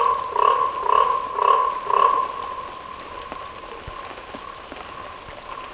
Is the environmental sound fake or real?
real